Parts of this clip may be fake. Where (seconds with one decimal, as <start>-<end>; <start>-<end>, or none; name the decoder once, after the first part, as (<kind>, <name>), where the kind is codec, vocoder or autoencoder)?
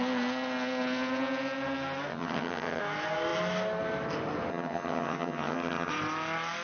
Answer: 2.1-2.8 (vocoder, HiFi-GAN); 4.5-5.9